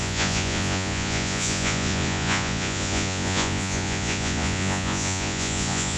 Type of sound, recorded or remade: remade